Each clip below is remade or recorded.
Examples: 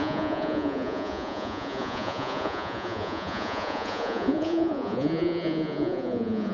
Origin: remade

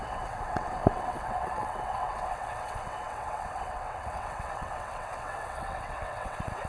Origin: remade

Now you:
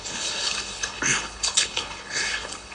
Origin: remade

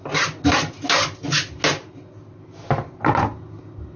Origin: recorded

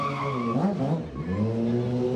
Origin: recorded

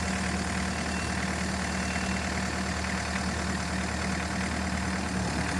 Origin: recorded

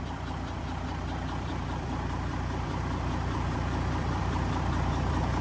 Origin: remade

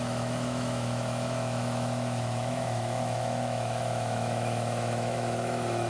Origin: remade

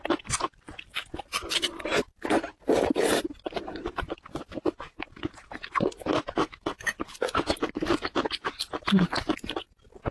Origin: recorded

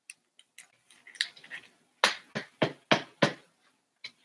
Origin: recorded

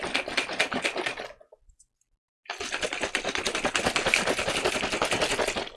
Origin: recorded